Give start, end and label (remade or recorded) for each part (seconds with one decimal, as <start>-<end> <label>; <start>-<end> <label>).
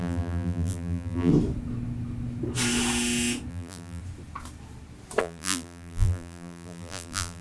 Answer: 0.0-1.3 remade; 1.3-3.5 recorded; 3.5-4.0 remade; 4.0-5.2 recorded; 5.2-7.4 remade